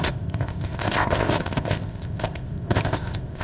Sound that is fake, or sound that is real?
fake